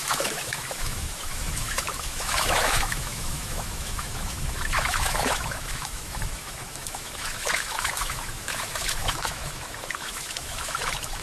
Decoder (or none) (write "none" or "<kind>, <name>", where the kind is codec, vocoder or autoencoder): autoencoder, DAC-VAE